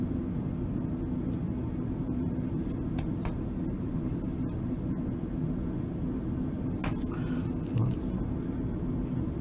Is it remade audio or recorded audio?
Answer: recorded